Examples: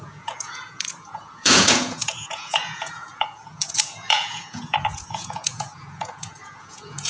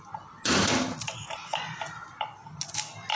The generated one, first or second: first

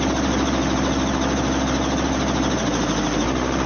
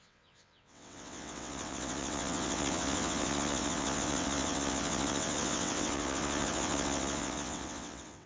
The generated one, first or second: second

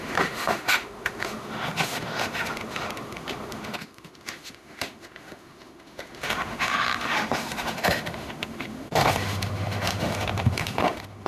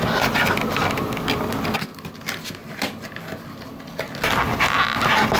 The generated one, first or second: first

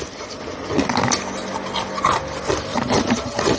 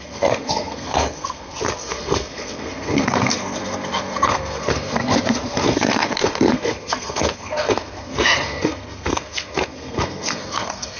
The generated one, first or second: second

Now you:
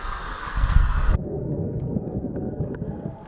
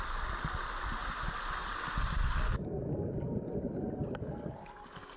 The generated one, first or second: first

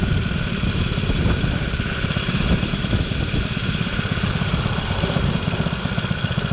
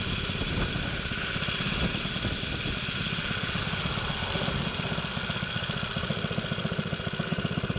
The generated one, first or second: first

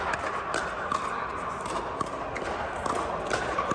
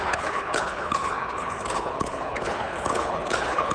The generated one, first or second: second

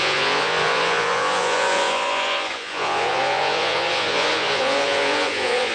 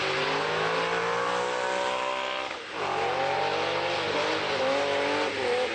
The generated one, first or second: first